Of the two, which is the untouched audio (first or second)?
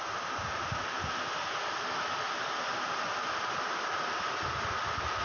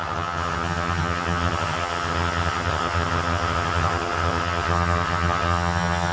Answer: first